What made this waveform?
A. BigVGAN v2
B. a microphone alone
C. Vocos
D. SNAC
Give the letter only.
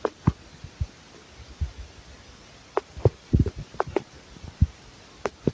B